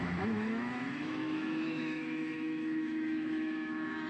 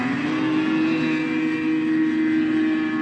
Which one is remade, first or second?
first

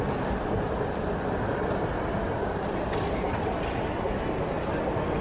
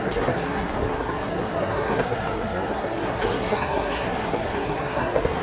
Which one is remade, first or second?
second